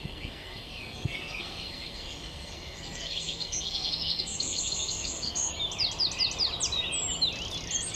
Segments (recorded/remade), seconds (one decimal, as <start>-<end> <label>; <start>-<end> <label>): 0.0-5.5 remade; 5.5-8.0 recorded